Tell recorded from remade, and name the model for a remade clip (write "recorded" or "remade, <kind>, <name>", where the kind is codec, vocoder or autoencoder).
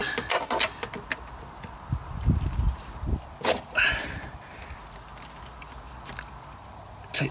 recorded